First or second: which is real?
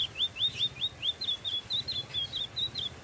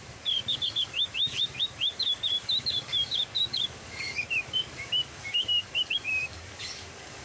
first